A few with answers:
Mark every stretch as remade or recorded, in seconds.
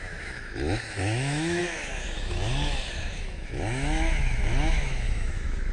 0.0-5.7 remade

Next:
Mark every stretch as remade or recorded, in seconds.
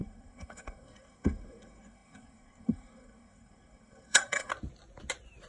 0.0-4.5 remade; 4.5-5.5 recorded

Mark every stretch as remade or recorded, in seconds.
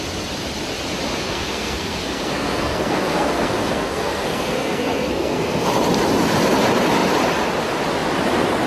0.0-1.2 recorded; 1.2-5.7 remade; 5.7-8.7 recorded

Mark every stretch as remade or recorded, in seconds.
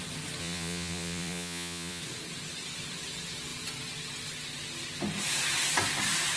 0.0-0.4 recorded; 0.4-2.0 remade; 2.0-6.4 recorded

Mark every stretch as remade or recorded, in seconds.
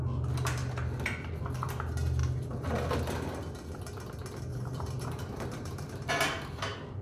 0.0-4.5 recorded; 4.5-6.1 remade; 6.1-7.0 recorded